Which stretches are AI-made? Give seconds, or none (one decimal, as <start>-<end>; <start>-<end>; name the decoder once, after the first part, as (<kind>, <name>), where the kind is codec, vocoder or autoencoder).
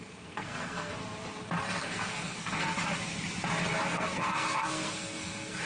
0.0-0.9 (codec, SNAC); 1.8-2.7; 3.9-5.7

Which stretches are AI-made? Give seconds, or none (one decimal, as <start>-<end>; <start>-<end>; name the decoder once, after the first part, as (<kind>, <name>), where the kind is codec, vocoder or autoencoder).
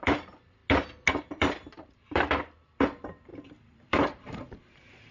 0.0-0.6 (vocoder, BigVGAN v2); 1.1-5.1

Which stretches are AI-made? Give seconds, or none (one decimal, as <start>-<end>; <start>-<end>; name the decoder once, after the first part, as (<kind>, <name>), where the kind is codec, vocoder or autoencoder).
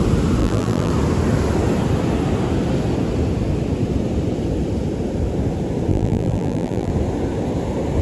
0.4-0.9 (vocoder, BigVGAN v2); 5.9-6.9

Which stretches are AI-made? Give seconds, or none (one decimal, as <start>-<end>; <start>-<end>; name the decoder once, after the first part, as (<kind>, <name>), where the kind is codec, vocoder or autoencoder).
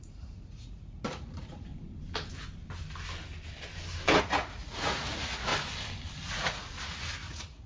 0.0-1.7 (vocoder, Vocos); 4.2-5.5; 6.3-7.7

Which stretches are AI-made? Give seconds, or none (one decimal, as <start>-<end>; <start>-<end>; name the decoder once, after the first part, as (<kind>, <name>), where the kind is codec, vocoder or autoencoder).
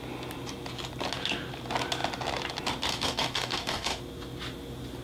2.9-4.0 (codec, DAC)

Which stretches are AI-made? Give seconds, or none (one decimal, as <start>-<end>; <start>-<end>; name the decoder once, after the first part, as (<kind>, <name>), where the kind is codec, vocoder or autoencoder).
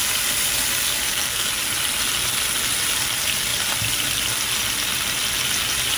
1.0-1.5 (codec, SNAC)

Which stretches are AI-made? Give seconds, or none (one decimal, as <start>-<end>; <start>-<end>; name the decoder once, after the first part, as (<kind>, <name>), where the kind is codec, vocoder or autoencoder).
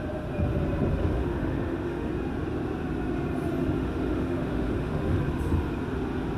1.0-2.1 (autoencoder, DAC-VAE); 3.6-5.2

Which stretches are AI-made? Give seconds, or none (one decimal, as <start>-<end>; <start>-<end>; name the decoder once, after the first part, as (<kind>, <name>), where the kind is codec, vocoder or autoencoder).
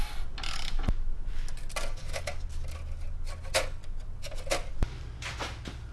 none